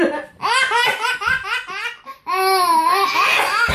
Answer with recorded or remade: recorded